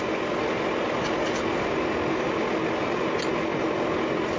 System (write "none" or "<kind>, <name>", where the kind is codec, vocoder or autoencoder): none